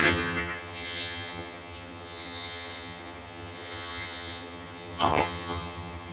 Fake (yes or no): yes